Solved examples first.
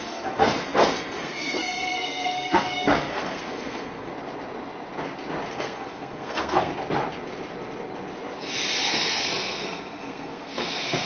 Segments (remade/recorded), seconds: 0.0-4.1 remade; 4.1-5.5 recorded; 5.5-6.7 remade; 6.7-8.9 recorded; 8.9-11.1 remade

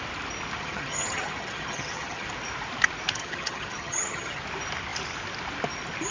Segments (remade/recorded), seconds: 0.0-0.6 recorded; 0.6-2.3 remade; 2.3-3.2 recorded; 3.2-4.4 remade; 4.4-6.1 recorded

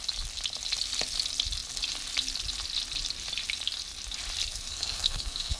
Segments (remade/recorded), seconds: 0.0-4.5 recorded; 4.5-5.6 remade

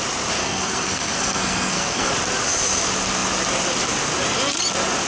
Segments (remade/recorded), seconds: 0.0-0.4 recorded; 0.4-2.1 remade; 2.1-5.1 recorded

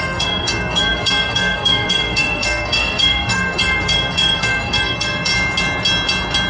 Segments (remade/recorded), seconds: 0.0-5.3 remade; 5.3-6.5 recorded

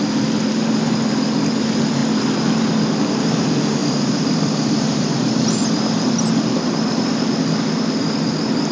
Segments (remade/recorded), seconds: 0.0-3.8 recorded; 3.8-5.8 remade; 5.8-8.7 recorded